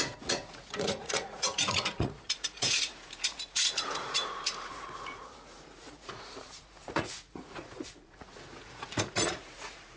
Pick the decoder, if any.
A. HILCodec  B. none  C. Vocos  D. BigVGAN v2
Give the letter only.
C